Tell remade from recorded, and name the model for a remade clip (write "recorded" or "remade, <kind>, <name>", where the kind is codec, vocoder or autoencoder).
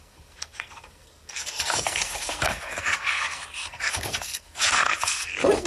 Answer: remade, codec, SNAC